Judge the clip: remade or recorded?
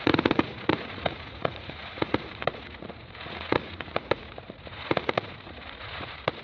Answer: remade